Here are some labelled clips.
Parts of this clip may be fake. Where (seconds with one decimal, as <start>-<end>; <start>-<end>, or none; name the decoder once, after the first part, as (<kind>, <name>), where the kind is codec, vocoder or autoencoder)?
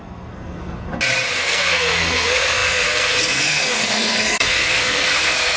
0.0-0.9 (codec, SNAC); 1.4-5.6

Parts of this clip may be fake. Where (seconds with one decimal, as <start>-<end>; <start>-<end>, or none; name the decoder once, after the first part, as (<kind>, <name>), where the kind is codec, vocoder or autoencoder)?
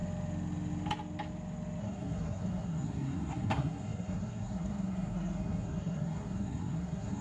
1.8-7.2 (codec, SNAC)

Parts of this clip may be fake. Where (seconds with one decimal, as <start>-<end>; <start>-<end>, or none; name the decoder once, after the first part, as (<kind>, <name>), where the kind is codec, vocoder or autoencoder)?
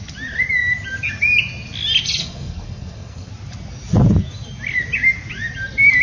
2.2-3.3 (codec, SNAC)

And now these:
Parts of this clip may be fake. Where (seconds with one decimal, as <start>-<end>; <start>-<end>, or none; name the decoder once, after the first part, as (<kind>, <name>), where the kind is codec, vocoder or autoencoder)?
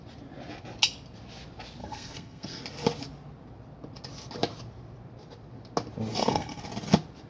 1.8-2.6 (codec, SNAC); 6.1-6.6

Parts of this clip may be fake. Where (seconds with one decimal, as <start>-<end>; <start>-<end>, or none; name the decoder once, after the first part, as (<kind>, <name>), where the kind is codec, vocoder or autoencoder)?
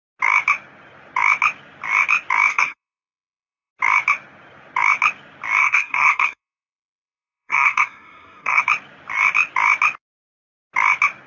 2.5-3.7 (codec, SNAC); 5.6-8.6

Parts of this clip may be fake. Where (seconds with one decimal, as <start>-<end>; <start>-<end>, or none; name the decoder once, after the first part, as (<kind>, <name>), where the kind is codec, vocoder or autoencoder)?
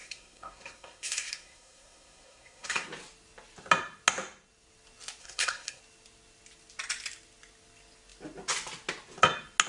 0.0-2.9 (codec, SNAC); 5.2-5.8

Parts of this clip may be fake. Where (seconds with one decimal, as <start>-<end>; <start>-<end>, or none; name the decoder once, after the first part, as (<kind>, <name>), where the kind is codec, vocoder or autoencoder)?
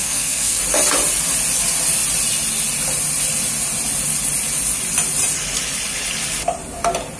0.0-0.6 (codec, SNAC)